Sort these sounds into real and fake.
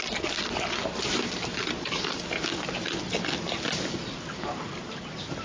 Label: real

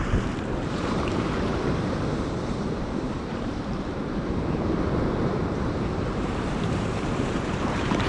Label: fake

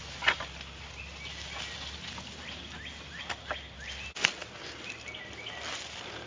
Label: real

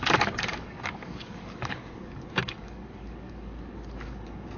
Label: fake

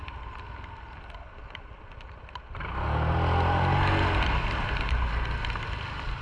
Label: real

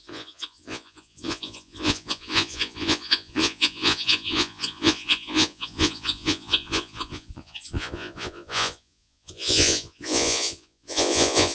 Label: fake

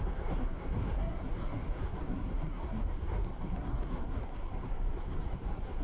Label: fake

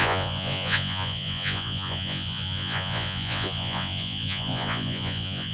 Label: fake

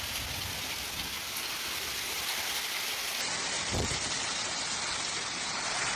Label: real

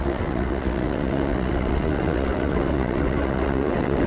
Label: fake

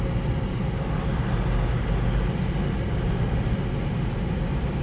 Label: real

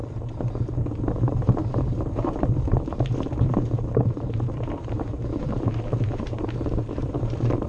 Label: fake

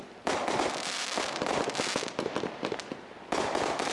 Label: fake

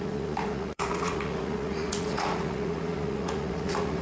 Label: fake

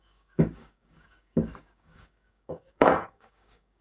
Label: fake